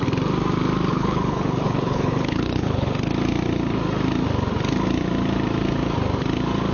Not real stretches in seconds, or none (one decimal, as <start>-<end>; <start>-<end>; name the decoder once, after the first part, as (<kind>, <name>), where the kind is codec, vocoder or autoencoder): 0.9-2.9 (codec, HILCodec)